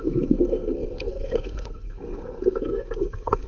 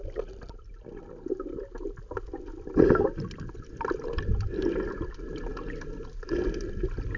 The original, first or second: second